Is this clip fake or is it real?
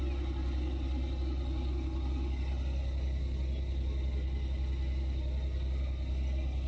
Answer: real